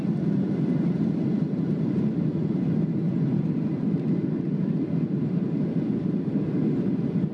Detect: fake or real real